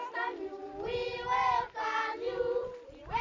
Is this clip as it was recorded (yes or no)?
yes